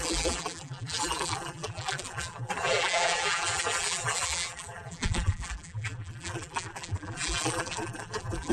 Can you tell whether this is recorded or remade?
remade